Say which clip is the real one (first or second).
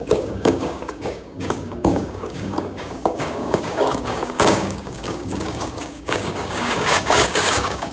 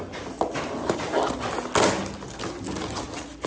second